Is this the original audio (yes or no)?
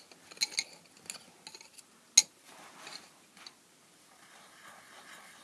yes